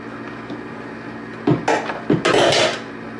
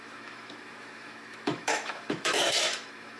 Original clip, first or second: first